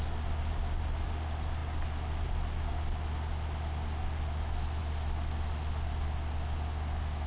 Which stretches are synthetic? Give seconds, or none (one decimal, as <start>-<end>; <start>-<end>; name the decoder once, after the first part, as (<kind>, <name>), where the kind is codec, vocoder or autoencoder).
none